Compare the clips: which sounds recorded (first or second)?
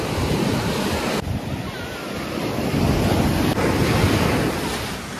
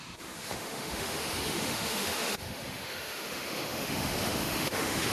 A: first